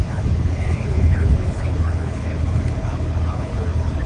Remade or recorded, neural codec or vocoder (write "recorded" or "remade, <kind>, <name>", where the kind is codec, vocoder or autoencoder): remade, codec, HILCodec